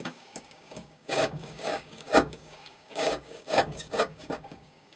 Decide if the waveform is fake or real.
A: fake